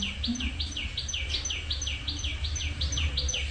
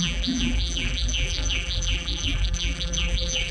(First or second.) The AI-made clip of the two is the second